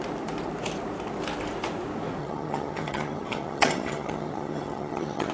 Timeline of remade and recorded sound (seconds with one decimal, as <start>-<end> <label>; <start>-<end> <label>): 0.0-2.2 recorded; 2.2-5.3 remade